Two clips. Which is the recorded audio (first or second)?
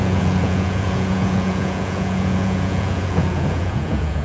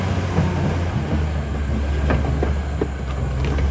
second